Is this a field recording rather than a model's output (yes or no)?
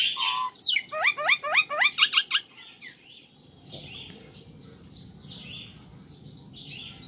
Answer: yes